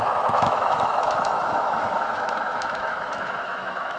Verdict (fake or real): fake